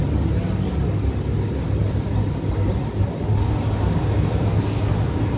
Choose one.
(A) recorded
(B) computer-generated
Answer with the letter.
A